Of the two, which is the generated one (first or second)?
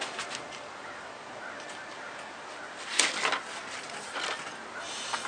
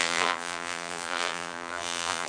second